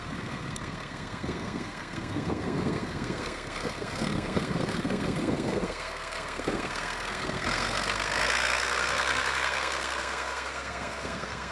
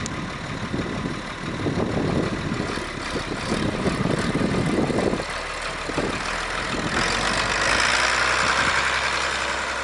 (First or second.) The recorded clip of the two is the second